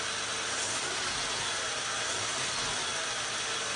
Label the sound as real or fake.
real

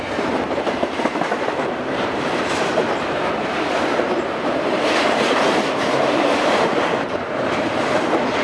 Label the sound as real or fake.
fake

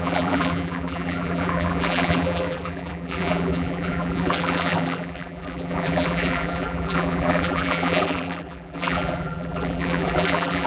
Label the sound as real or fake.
fake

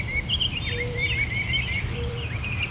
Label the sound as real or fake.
fake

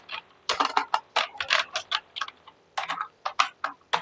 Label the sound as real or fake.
real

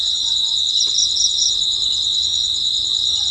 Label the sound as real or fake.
real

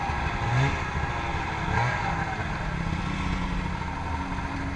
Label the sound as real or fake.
real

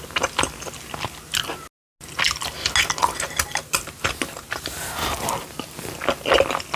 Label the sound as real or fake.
real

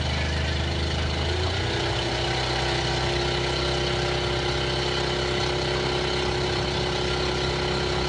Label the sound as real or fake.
real